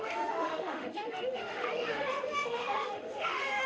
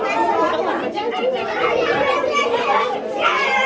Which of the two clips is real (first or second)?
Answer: second